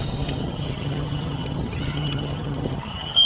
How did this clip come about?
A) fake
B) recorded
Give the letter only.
A